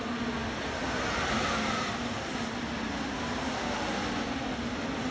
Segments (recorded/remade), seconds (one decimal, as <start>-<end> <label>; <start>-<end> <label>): 0.0-5.1 recorded

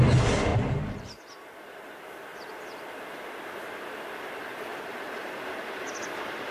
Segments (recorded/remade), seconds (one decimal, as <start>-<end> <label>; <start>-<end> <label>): 0.0-0.5 recorded; 0.5-1.2 remade; 1.2-6.5 recorded